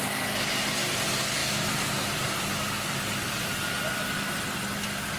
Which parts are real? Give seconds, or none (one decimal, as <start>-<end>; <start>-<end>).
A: 0.0-1.4; 4.5-5.2